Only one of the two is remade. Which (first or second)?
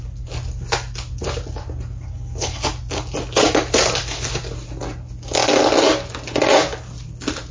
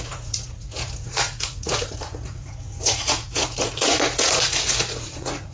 second